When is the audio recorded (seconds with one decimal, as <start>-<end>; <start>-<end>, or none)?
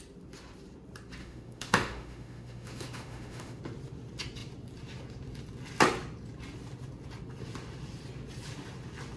0.0-1.2; 3.6-9.2